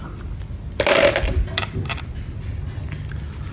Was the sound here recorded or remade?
recorded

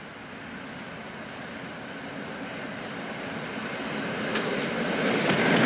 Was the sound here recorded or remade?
recorded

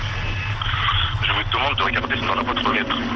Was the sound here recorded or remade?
recorded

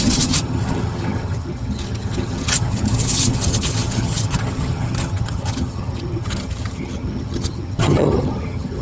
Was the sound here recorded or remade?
remade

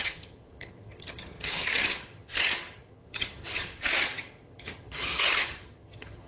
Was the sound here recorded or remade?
remade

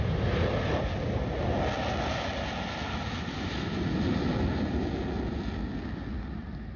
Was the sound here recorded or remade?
recorded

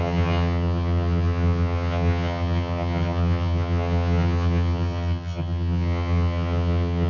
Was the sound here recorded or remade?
remade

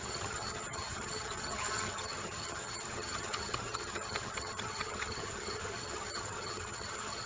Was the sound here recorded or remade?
remade